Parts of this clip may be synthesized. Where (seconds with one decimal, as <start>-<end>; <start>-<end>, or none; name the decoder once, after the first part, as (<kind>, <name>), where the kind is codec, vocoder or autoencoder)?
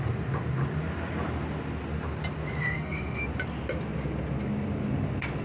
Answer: 2.6-3.2 (autoencoder, DAC-VAE)